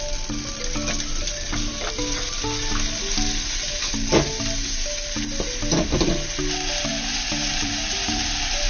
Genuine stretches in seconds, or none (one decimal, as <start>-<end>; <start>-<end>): 0.0-1.1; 2.2-6.9